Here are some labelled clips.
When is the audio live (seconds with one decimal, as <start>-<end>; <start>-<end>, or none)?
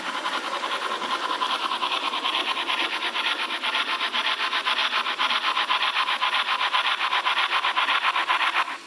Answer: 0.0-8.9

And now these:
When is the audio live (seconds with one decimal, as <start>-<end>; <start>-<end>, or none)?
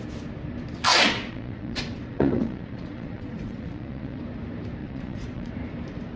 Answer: 0.0-0.9; 4.2-4.8; 5.5-6.2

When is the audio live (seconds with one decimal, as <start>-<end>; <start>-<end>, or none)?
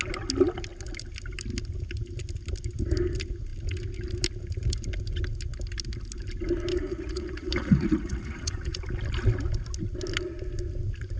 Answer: 0.0-6.7; 8.8-11.2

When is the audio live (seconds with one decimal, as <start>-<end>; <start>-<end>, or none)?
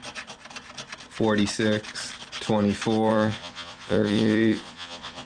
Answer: 0.0-3.1